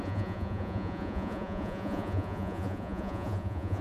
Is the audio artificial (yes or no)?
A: yes